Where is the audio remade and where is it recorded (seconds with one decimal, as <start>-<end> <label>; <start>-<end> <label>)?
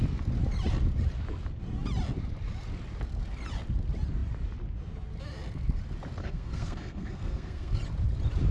0.0-6.2 recorded; 6.2-7.8 remade; 7.8-8.5 recorded